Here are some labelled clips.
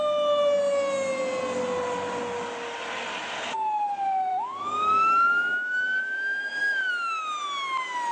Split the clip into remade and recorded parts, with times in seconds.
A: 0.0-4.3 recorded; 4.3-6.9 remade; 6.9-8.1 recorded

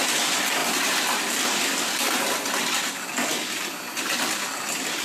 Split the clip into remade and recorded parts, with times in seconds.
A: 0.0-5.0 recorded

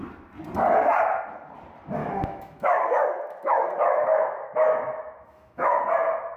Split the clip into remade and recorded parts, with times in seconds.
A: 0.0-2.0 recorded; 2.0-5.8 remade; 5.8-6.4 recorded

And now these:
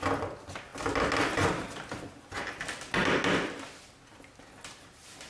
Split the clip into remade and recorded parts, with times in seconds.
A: 0.0-5.3 recorded

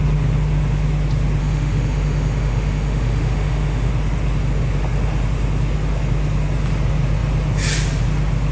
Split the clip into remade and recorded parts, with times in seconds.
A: 0.0-1.4 recorded; 1.4-3.9 remade; 3.9-8.5 recorded

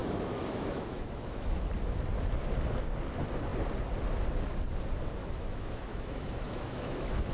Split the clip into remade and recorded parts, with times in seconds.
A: 0.0-1.6 remade; 1.6-5.2 recorded; 5.2-7.3 remade